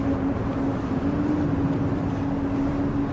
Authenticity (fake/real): real